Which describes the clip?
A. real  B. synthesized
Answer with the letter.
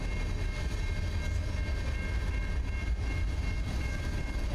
A